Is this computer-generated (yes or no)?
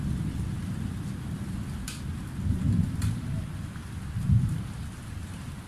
no